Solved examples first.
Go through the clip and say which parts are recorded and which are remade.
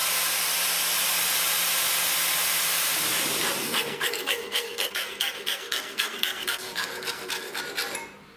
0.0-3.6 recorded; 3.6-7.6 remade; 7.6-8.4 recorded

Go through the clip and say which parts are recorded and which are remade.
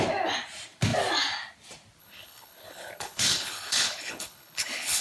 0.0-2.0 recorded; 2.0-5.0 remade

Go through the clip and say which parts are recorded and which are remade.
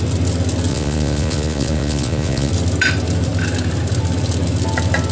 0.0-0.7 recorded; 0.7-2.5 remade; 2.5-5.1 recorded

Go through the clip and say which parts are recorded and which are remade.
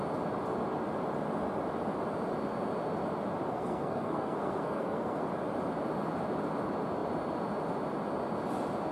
0.0-3.5 recorded; 3.5-5.3 remade; 5.3-8.9 recorded